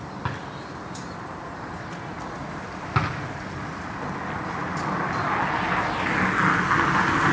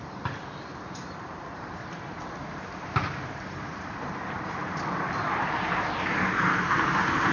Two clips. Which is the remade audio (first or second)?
second